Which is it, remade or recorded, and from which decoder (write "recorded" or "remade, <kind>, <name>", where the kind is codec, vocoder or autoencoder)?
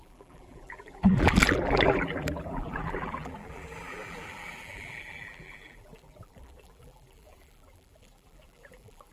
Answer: remade, vocoder, BigVGAN v2